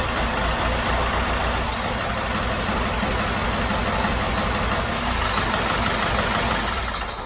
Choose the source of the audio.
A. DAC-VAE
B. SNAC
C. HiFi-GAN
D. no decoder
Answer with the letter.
D